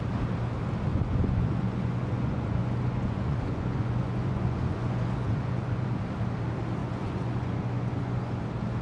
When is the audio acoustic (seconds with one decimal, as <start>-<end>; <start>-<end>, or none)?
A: 0.0-0.9; 6.0-6.8; 8.4-8.8